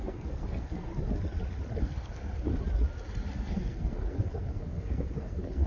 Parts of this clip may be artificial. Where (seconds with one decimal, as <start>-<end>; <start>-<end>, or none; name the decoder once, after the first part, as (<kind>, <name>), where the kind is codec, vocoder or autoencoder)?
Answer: 0.0-0.9 (codec, SNAC); 1.8-2.5; 3.3-5.7